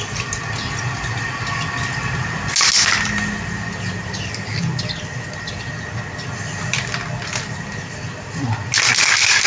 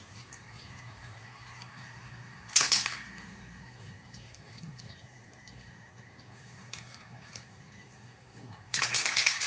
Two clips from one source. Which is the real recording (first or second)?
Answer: first